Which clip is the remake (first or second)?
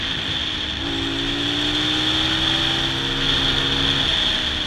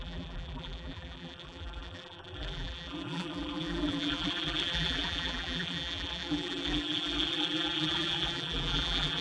second